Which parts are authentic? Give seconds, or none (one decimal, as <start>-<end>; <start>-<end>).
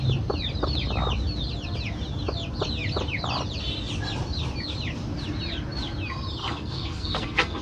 0.0-6.4